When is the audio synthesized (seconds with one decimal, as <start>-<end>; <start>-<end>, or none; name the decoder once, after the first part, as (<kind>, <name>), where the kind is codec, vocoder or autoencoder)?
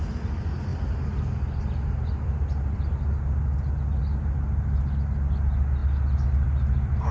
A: none